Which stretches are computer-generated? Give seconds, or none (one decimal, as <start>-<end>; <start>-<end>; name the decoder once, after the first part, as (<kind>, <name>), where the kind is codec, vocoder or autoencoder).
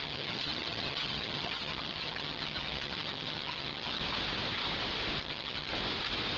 0.0-4.0 (vocoder, HiFi-GAN); 5.2-5.7